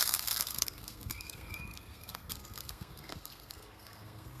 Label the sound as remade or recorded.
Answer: remade